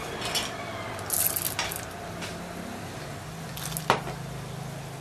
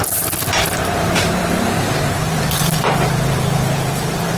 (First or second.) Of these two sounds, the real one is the first